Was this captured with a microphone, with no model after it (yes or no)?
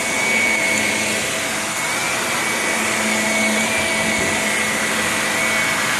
yes